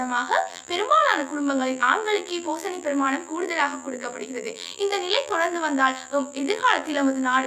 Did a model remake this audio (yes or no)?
yes